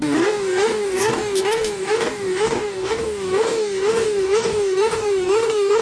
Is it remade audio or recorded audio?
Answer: remade